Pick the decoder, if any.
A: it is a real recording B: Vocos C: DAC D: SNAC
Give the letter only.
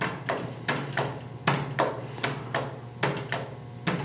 A